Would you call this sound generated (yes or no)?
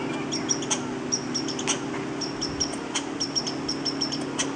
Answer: no